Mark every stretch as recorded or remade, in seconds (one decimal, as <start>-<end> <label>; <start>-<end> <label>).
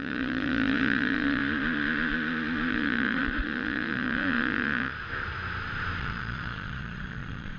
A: 0.0-1.4 remade; 1.4-2.7 recorded; 2.7-5.0 remade; 5.0-6.0 recorded; 6.0-7.6 remade